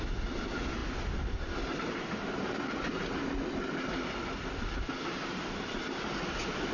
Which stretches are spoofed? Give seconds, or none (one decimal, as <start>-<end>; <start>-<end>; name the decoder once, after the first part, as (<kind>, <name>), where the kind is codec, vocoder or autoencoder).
none